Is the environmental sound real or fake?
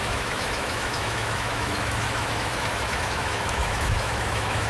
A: fake